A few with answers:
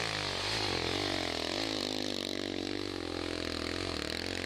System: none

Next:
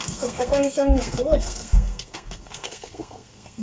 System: codec, SNAC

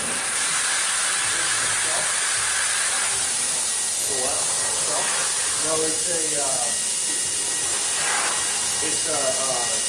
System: none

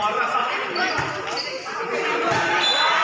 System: none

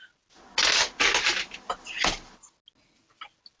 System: none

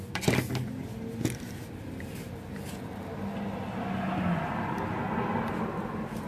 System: none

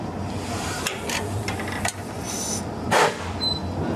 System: vocoder, BigVGAN v2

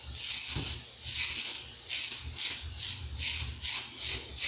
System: none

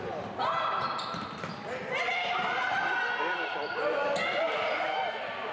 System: none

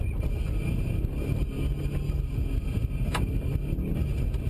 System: none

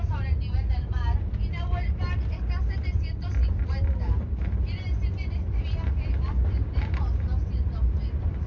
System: none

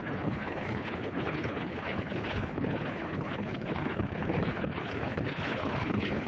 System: codec, HILCodec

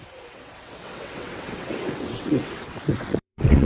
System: vocoder, WaveNeXt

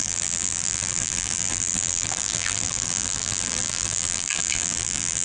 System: vocoder, BigVGAN v2